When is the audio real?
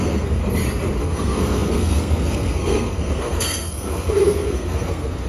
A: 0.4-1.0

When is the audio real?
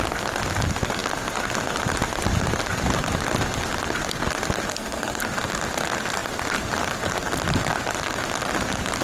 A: 0.0-4.7; 5.2-9.0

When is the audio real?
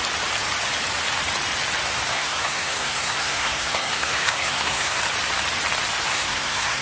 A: 0.0-2.1; 5.0-6.1